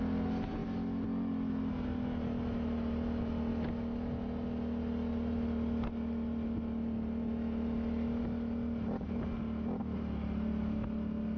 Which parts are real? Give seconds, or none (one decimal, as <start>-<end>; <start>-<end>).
0.0-11.4